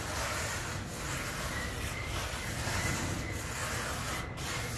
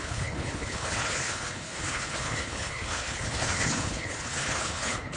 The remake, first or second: second